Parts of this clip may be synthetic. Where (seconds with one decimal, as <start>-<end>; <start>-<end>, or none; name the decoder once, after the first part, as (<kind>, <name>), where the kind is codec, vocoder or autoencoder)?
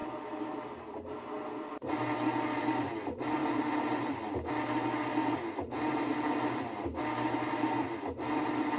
none